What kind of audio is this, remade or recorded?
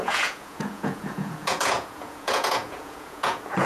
remade